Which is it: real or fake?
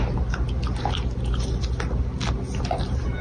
real